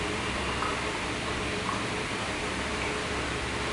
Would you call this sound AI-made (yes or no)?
yes